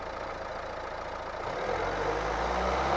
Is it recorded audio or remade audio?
recorded